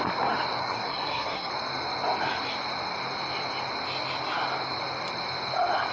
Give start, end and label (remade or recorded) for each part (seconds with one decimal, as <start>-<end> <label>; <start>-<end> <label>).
0.0-0.6 recorded; 0.6-1.5 remade; 1.5-5.9 recorded